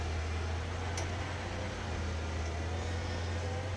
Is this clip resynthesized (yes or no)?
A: no